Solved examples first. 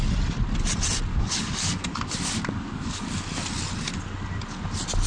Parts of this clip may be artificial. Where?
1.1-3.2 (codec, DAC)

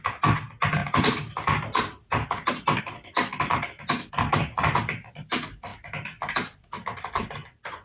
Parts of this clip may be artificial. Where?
none

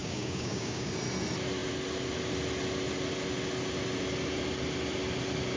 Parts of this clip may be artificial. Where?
0.0-0.9 (codec, DAC)